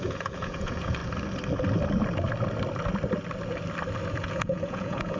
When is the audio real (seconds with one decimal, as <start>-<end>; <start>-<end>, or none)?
1.0-4.1